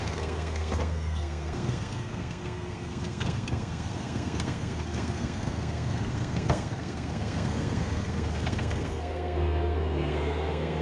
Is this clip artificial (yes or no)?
yes